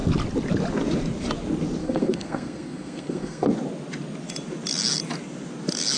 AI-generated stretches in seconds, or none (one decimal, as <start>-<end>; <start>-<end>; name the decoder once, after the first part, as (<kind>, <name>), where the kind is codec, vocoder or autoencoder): 1.8-3.5 (codec, SNAC)